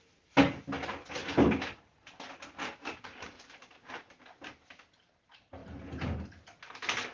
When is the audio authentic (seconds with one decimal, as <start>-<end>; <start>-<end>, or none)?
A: 0.0-1.2; 1.8-2.6; 4.1-7.1